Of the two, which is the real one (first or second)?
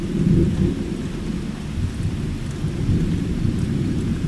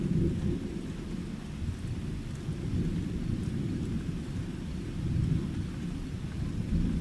first